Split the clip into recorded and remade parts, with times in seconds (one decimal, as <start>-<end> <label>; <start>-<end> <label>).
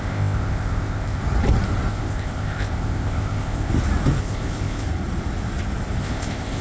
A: 0.0-1.2 remade; 1.2-1.9 recorded; 1.9-3.7 remade; 3.7-4.2 recorded; 4.2-4.9 remade; 4.9-6.0 recorded; 6.0-6.6 remade